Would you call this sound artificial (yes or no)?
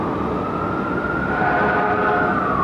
no